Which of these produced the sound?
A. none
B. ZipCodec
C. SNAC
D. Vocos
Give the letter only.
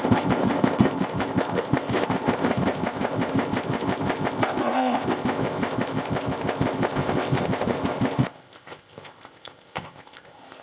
B